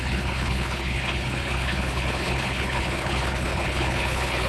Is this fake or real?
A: fake